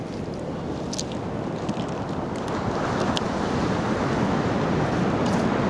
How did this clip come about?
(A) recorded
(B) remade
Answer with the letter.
A